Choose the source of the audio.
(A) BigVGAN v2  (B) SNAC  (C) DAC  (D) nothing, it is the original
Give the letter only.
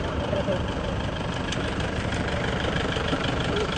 A